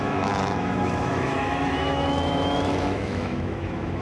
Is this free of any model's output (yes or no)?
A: no